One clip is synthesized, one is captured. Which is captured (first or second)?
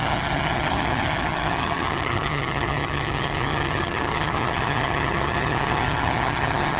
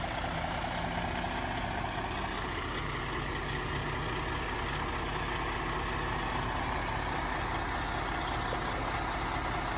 second